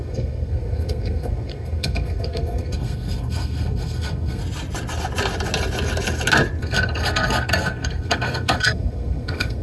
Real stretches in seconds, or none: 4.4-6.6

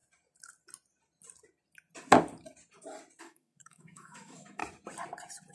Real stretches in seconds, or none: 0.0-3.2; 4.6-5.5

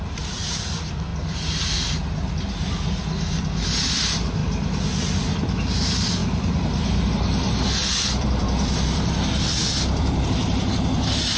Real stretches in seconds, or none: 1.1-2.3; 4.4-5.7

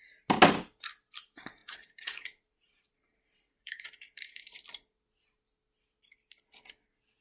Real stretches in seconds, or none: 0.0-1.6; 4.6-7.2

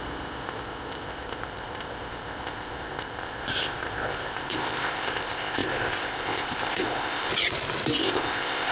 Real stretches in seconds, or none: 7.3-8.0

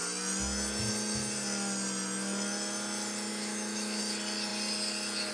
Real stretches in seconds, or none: 0.0-3.3; 4.0-5.3

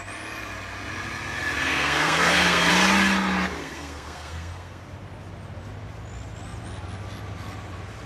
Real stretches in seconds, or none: 0.0-1.6; 2.7-3.6; 4.8-8.1